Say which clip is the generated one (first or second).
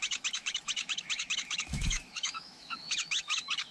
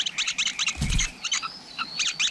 first